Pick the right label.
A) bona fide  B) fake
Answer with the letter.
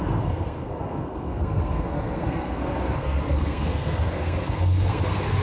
B